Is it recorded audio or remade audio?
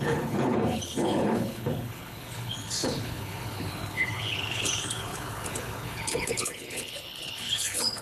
remade